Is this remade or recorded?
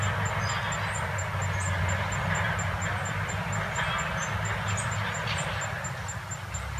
recorded